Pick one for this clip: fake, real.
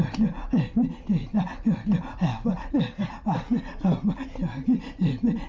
real